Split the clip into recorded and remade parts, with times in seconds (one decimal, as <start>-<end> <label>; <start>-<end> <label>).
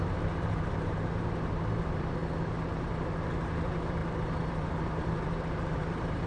0.0-2.2 remade; 2.2-3.5 recorded; 3.5-6.3 remade